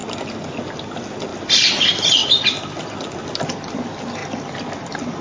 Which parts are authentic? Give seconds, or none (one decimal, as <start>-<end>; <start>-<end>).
0.0-5.2